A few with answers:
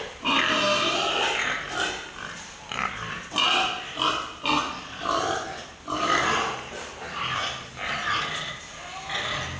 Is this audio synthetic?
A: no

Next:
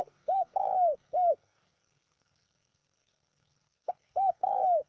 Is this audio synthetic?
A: yes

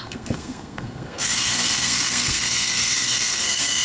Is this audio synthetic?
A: yes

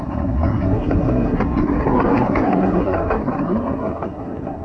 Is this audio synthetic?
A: yes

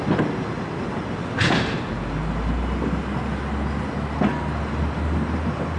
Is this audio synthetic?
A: no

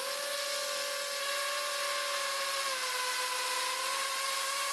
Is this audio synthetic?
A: no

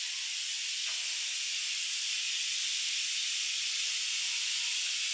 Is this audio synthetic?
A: no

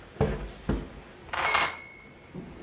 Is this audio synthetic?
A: no